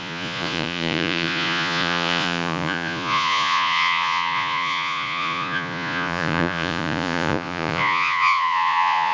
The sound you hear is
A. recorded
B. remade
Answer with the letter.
B